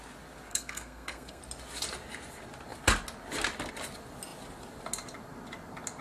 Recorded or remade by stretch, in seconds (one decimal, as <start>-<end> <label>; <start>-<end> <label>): 0.0-0.5 recorded; 0.5-1.4 remade; 1.4-6.0 recorded